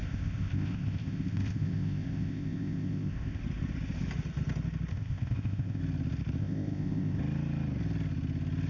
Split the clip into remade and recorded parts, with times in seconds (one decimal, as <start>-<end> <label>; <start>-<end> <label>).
0.0-3.4 remade; 3.4-4.9 recorded; 4.9-5.8 remade; 5.8-6.4 recorded; 6.4-7.2 remade; 7.2-8.7 recorded